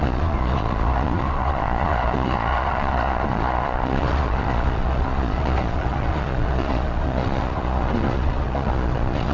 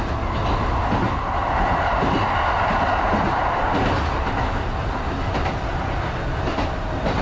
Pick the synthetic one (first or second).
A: first